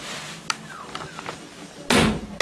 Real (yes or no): yes